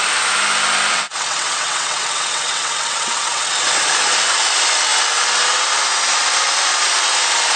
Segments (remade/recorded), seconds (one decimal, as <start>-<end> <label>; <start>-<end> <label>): 0.0-0.9 recorded; 0.9-3.5 remade; 3.5-7.6 recorded